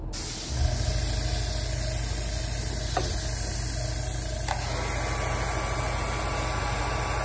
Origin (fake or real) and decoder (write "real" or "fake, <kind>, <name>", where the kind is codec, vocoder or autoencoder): real